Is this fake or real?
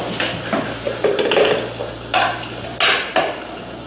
real